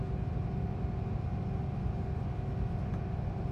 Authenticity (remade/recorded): recorded